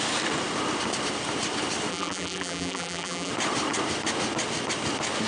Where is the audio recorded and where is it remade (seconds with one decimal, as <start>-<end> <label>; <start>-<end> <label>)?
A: 0.0-1.9 recorded; 1.9-3.3 remade; 3.3-5.3 recorded